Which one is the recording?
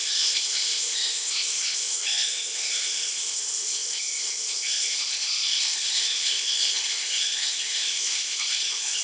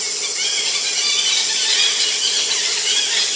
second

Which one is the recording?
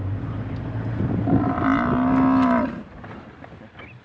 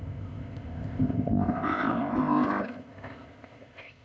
first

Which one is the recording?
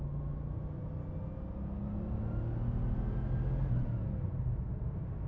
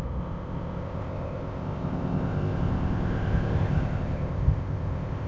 first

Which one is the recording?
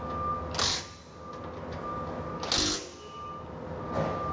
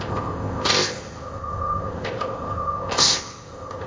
first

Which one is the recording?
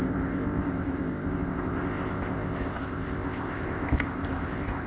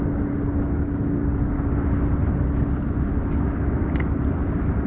second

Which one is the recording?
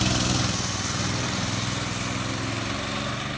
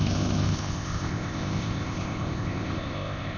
first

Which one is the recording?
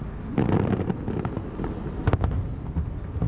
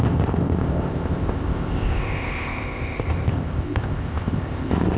first